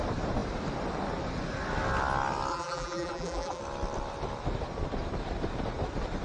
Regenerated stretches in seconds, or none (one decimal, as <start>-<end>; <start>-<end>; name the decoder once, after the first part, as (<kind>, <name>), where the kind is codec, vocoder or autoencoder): 2.5-3.6 (vocoder, BigVGAN v2)